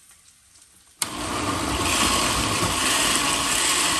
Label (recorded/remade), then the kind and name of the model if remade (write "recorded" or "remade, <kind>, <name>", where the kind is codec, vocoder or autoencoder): remade, vocoder, BigVGAN v2